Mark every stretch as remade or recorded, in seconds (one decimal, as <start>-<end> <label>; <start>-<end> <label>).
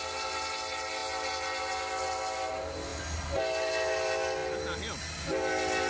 0.0-5.9 recorded